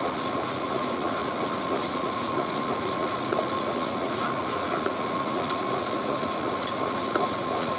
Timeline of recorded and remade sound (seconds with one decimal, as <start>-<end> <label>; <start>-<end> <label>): 0.0-7.8 remade